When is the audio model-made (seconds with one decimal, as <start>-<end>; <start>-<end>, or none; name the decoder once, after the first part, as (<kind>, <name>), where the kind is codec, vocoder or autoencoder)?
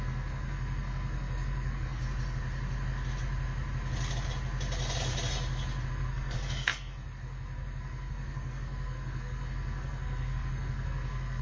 0.0-2.0 (codec, SNAC); 5.9-11.4